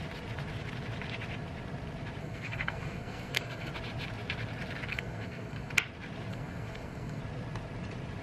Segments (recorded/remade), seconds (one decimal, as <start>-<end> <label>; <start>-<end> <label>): 0.0-2.2 recorded; 2.2-3.7 remade; 3.7-4.9 recorded; 4.9-5.7 remade; 5.7-6.3 recorded; 6.3-7.2 remade; 7.2-8.2 recorded